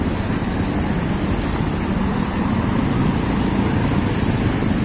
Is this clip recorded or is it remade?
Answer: recorded